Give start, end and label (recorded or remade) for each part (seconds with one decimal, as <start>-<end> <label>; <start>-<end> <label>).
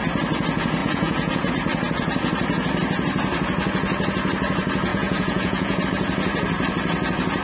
0.0-0.8 recorded; 0.8-1.5 remade; 1.5-4.9 recorded; 4.9-5.8 remade; 5.8-7.4 recorded